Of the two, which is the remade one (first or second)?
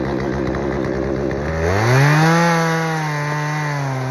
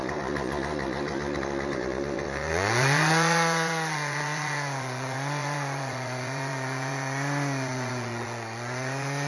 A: second